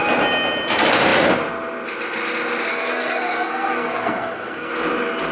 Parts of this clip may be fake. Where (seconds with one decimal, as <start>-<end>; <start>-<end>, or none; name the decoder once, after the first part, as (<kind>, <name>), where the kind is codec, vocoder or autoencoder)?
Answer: 2.7-4.7 (codec, SNAC)